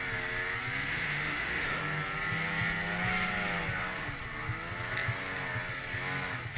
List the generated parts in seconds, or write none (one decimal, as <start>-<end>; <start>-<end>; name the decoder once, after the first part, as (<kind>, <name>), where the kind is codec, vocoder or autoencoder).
0.9-1.8 (autoencoder, DAC-VAE)